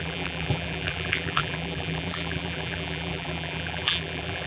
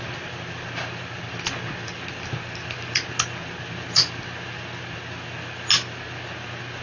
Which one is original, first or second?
second